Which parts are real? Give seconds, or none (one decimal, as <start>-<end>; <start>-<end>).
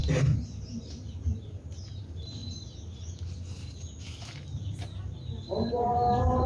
0.0-0.8; 2.4-5.7